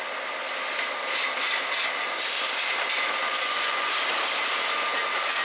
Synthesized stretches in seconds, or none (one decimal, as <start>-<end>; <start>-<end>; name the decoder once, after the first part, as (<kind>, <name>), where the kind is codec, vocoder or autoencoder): 3.2-3.9 (vocoder, Vocos)